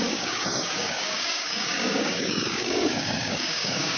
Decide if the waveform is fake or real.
fake